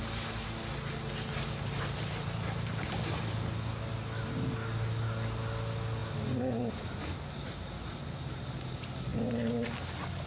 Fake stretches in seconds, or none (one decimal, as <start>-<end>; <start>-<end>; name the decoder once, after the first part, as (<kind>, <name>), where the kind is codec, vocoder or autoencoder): none